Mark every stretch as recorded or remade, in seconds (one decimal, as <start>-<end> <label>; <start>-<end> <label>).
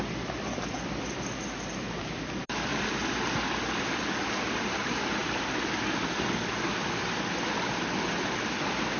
0.0-2.7 remade; 2.7-4.4 recorded; 4.4-5.2 remade; 5.2-8.6 recorded; 8.6-9.0 remade